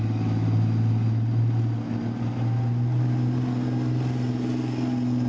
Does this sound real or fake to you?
real